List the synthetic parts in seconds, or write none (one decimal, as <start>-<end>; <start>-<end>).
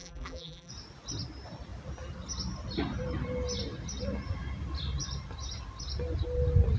0.0-0.7